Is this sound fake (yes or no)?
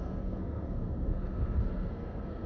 yes